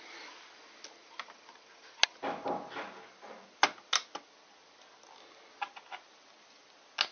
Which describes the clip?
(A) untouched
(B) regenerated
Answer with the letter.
A